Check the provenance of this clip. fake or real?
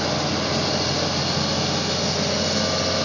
real